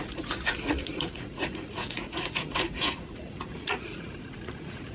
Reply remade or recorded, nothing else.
remade